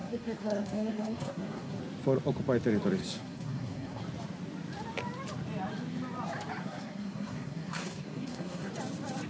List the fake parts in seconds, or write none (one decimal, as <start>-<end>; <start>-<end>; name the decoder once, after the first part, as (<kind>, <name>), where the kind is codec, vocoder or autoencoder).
0.0-1.8 (codec, SNAC); 3.0-4.0; 6.6-8.7